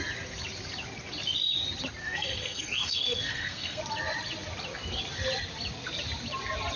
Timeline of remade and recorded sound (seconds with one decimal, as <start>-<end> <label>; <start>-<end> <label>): 0.0-2.0 recorded; 2.0-3.8 remade; 3.8-6.8 recorded